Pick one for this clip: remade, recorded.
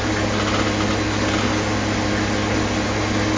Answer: recorded